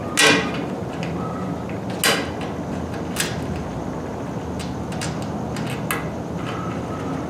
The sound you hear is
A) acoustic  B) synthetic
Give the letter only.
A